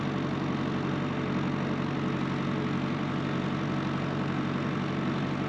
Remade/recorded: recorded